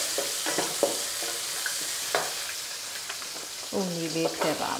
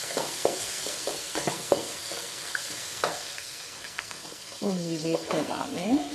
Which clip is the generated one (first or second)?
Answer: second